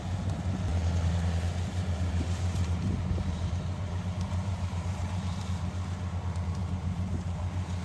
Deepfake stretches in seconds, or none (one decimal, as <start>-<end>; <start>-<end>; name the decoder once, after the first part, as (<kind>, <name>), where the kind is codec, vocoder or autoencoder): 0.7-5.4 (vocoder, BigVGAN v2); 6.6-7.8